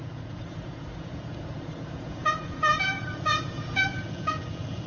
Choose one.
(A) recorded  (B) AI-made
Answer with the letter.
B